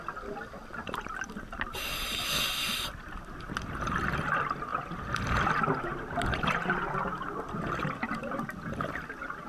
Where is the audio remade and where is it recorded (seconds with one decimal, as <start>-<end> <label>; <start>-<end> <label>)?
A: 0.0-4.7 recorded; 4.7-5.2 remade; 5.2-5.9 recorded; 5.9-6.5 remade; 6.5-9.5 recorded